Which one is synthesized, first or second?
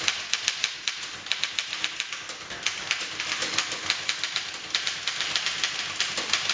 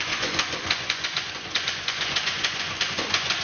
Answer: second